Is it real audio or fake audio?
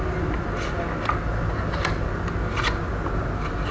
real